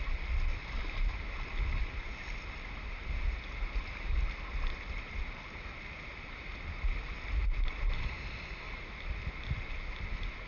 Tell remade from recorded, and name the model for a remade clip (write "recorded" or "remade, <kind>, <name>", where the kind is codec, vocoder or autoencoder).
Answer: recorded